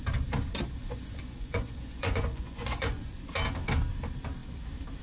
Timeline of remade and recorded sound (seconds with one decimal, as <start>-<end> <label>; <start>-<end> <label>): 0.0-0.8 recorded; 0.8-3.2 remade; 3.2-5.0 recorded